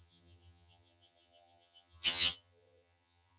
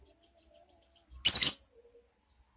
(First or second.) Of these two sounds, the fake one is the first